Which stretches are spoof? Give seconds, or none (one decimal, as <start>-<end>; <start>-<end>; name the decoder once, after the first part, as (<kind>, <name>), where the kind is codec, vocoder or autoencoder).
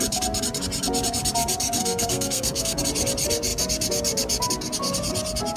1.8-2.8 (codec, SNAC)